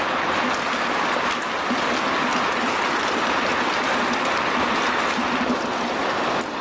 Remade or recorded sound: recorded